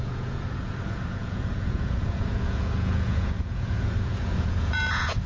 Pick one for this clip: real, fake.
fake